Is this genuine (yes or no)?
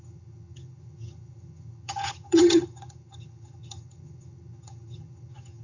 no